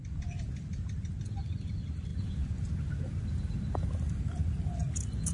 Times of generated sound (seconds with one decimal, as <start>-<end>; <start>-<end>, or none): none

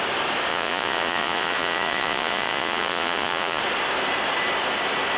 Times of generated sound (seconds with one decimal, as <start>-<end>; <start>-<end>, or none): 0.5-3.6